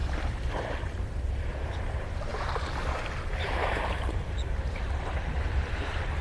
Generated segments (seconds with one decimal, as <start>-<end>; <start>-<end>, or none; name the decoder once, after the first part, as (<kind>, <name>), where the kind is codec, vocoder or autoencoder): 1.0-6.2 (vocoder, BigVGAN v2)